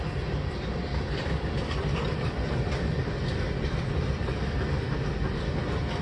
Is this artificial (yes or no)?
no